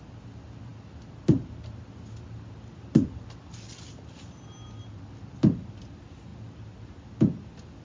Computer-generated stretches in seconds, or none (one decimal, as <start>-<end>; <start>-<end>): none